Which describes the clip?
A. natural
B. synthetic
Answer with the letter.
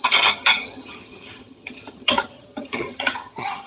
B